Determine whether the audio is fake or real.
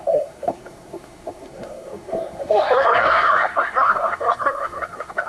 fake